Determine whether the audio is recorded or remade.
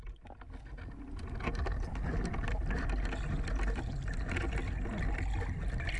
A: recorded